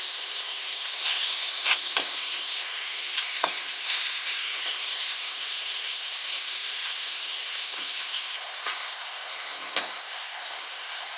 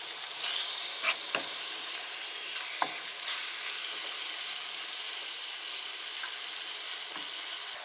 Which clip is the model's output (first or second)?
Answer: first